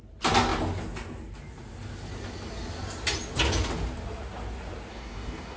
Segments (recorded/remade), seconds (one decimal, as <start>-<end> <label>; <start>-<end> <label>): 0.0-4.9 recorded; 4.9-5.6 remade